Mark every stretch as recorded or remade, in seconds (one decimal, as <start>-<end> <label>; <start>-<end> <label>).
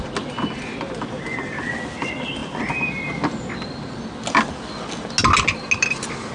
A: 0.0-6.3 recorded